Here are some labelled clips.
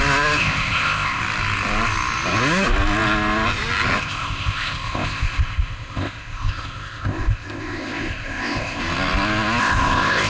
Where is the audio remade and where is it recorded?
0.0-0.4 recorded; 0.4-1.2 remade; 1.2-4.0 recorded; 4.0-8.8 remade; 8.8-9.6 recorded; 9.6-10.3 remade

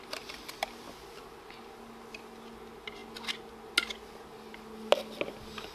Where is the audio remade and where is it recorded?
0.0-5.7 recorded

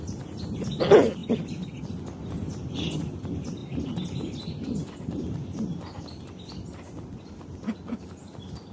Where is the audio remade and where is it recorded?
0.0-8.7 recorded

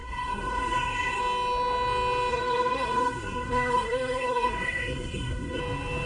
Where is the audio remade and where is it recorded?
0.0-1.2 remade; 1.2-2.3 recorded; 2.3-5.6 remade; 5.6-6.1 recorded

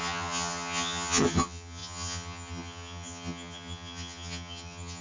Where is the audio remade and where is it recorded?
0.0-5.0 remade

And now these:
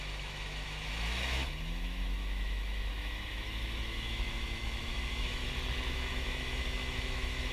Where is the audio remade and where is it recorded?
0.0-5.4 remade; 5.4-5.9 recorded; 5.9-7.5 remade

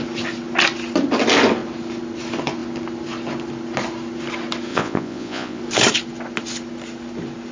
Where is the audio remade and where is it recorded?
0.0-4.7 recorded; 4.7-5.6 remade; 5.6-7.5 recorded